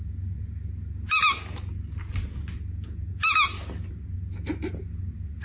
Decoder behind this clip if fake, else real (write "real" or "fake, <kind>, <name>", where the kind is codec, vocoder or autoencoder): real